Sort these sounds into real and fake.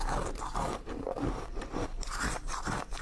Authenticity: fake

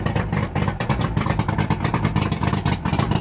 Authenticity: fake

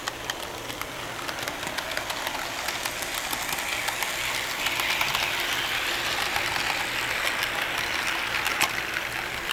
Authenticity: real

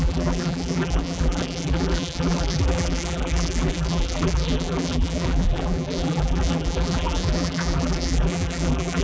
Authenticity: fake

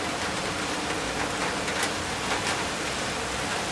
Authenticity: real